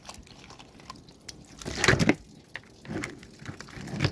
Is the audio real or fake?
real